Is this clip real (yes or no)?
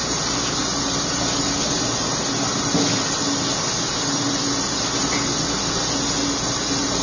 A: yes